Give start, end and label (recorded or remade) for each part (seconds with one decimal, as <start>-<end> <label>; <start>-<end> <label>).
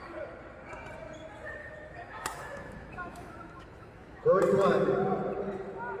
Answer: 0.0-1.6 recorded; 1.6-4.4 remade; 4.4-6.0 recorded